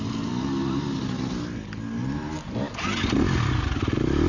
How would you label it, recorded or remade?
recorded